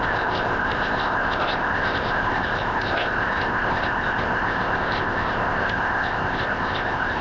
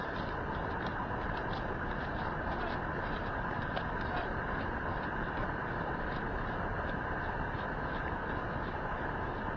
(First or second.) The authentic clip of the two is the second